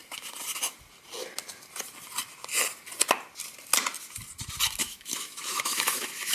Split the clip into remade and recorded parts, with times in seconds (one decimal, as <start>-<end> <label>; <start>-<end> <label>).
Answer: 0.0-4.8 recorded; 4.8-6.3 remade